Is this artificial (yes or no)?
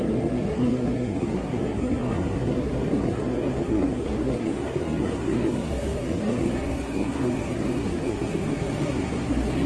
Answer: yes